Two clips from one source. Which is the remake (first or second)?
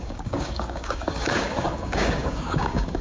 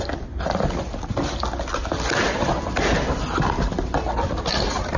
first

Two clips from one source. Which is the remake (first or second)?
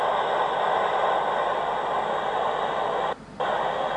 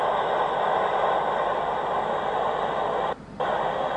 second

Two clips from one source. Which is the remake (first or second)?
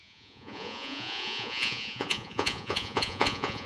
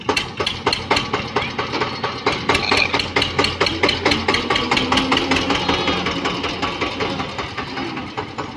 first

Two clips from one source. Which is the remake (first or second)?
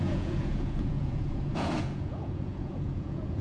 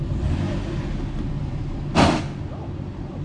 first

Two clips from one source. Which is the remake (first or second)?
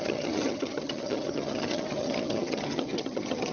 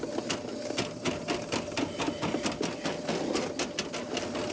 first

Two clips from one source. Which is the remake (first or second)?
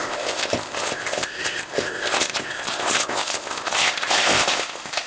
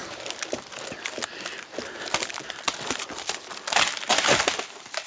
first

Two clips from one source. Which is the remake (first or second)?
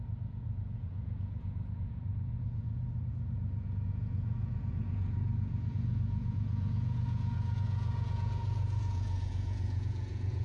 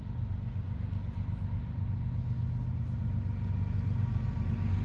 first